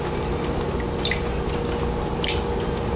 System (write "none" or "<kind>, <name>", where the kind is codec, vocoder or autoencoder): none